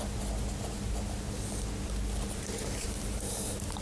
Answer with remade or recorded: recorded